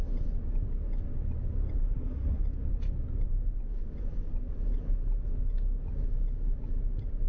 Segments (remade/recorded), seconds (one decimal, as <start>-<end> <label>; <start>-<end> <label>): 0.0-1.8 recorded; 1.8-2.4 remade; 2.4-7.3 recorded

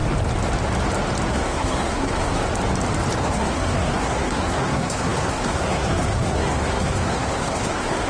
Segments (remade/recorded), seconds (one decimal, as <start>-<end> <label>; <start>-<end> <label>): 0.0-1.3 recorded; 1.3-2.4 remade; 2.4-3.2 recorded; 3.2-8.1 remade

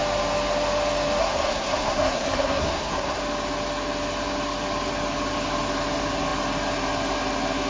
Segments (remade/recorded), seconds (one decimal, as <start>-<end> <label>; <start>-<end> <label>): 0.0-1.2 recorded; 1.2-3.2 remade; 3.2-7.7 recorded

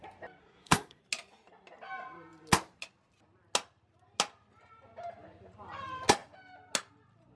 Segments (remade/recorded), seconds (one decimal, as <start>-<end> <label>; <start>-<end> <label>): 0.0-0.4 recorded; 0.4-1.0 remade; 1.0-7.4 recorded

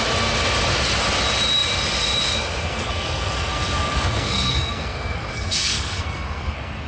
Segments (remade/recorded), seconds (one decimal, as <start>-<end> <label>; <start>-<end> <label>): 0.0-2.6 recorded; 2.6-6.9 remade

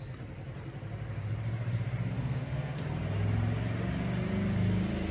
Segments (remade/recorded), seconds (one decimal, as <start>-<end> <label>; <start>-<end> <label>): 0.0-2.2 recorded; 2.2-2.8 remade; 2.8-5.1 recorded

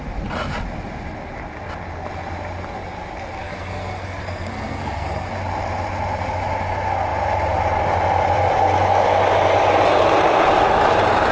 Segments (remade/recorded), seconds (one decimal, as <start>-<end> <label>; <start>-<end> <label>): 0.0-3.4 recorded; 3.4-5.3 remade; 5.3-11.3 recorded